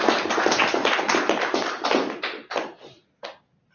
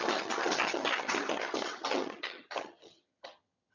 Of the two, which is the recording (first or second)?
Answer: first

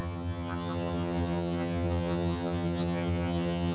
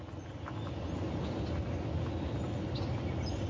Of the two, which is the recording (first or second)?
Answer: second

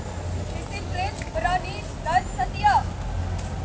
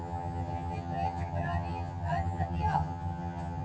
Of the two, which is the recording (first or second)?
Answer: first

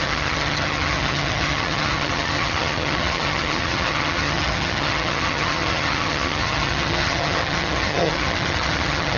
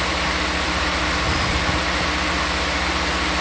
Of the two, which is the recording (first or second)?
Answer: second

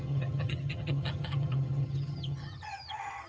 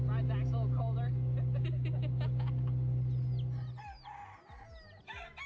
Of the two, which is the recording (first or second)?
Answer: second